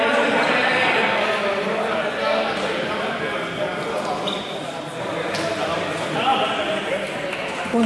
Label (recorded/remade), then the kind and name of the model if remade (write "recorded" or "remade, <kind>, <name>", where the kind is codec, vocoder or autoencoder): recorded